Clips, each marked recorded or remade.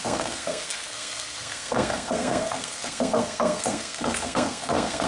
remade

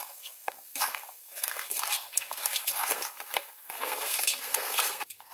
remade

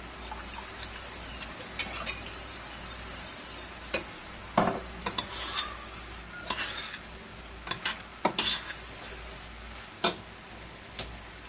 recorded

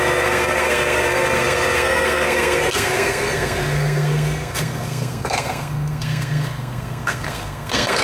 remade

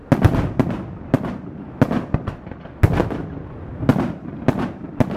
recorded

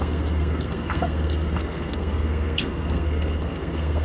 remade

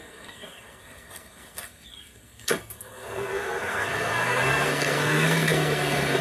remade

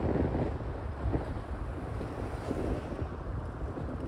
recorded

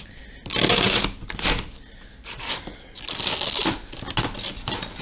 recorded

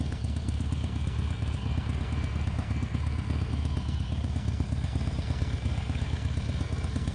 remade